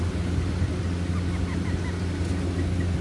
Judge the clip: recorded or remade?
recorded